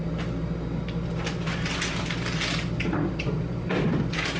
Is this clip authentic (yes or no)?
yes